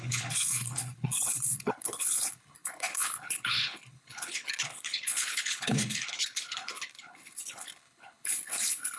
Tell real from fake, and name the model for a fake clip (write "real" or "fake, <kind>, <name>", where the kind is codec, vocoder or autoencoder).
fake, codec, HILCodec